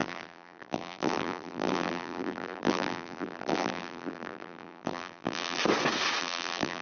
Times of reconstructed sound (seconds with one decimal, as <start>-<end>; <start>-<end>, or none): 0.0-5.6; 6.2-6.8